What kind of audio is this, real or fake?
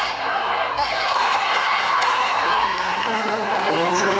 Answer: fake